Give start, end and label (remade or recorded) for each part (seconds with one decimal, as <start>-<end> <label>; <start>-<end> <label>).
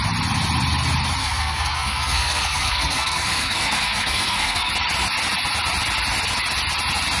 0.0-1.2 recorded; 1.2-4.7 remade; 4.7-7.2 recorded